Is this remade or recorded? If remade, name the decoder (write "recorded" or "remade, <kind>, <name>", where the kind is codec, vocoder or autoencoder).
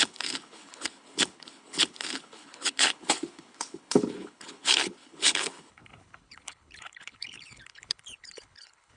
remade, codec, HILCodec